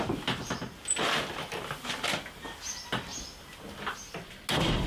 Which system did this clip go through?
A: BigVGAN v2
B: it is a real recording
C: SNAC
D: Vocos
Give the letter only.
B